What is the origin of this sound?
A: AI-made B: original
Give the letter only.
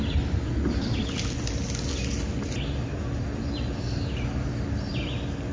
B